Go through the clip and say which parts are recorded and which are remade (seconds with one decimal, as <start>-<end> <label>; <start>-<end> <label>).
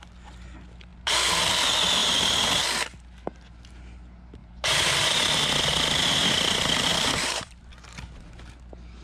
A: 0.0-0.9 recorded; 0.9-1.4 remade; 1.4-2.0 recorded; 2.0-2.5 remade; 2.5-4.4 recorded; 4.4-5.4 remade; 5.4-6.9 recorded; 6.9-7.7 remade; 7.7-9.0 recorded